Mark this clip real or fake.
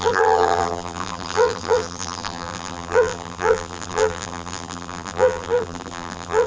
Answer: fake